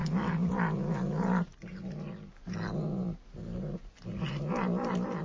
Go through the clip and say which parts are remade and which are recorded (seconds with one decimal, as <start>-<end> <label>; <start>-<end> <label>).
0.0-5.2 recorded